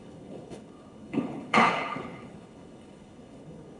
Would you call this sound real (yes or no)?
no